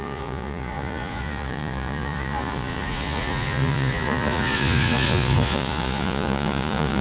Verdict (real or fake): fake